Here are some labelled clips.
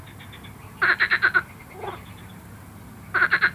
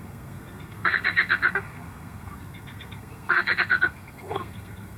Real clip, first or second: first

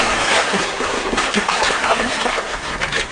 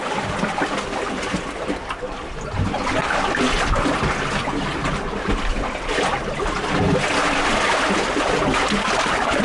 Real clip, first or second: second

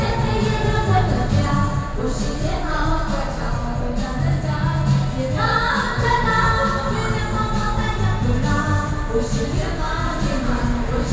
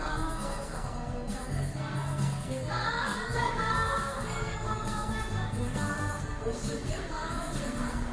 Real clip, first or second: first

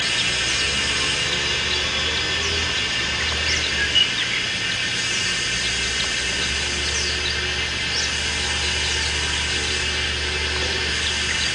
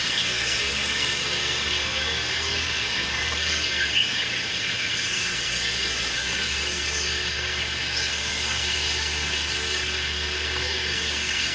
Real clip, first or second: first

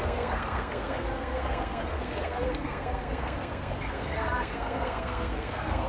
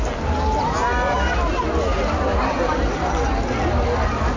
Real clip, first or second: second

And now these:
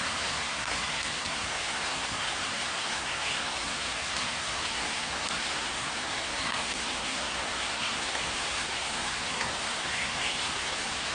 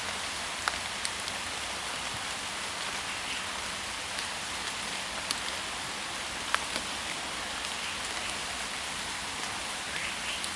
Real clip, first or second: second